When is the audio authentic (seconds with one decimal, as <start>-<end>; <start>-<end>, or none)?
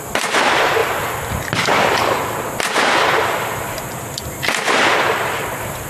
0.0-5.9